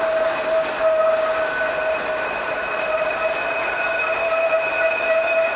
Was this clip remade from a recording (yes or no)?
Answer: no